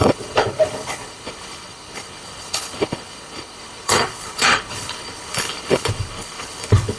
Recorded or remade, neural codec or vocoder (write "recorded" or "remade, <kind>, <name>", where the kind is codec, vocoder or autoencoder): remade, codec, HILCodec